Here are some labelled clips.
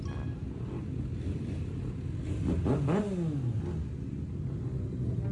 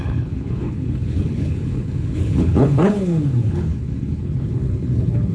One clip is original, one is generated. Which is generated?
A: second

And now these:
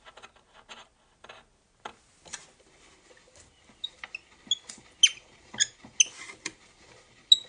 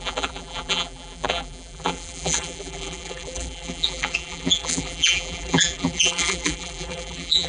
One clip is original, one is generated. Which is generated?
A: second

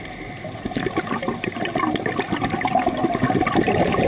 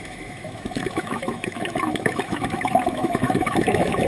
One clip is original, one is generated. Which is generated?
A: second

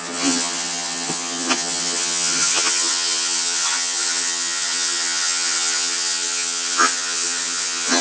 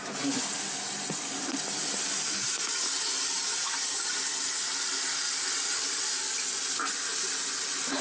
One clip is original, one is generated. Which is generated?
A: first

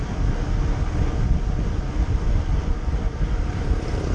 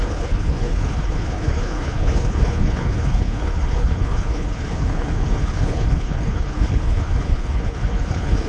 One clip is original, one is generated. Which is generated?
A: second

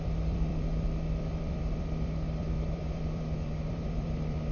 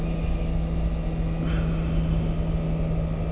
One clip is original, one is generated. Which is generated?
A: first